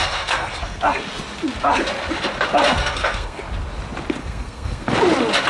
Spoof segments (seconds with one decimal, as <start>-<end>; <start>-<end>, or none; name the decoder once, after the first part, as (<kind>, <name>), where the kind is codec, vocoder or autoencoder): 0.0-0.8 (codec, SNAC); 2.8-3.4; 4.2-4.9